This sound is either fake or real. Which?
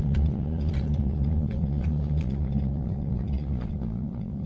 fake